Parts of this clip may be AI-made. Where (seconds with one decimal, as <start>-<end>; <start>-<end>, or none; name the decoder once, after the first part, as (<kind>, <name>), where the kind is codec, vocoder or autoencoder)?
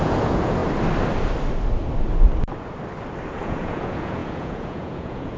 0.0-0.6 (vocoder, Vocos); 3.3-5.4